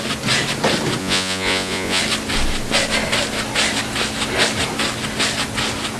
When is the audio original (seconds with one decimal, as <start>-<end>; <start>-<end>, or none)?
0.0-1.0; 2.0-6.0